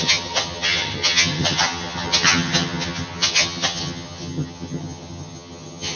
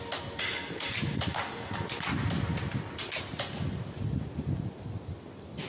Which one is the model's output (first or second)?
first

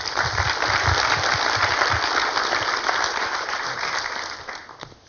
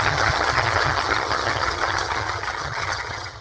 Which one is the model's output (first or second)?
second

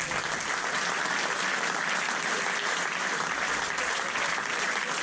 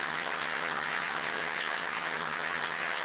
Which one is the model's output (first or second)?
second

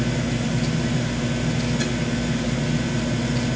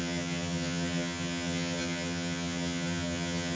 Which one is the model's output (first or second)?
second